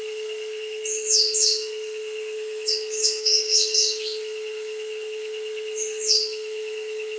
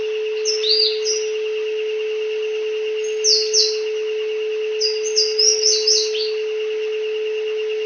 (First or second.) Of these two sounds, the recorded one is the second